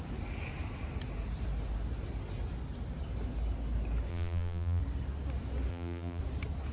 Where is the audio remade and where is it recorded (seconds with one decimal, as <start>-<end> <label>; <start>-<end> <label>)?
0.0-4.1 recorded; 4.1-4.8 remade; 4.8-5.7 recorded; 5.7-6.2 remade; 6.2-6.7 recorded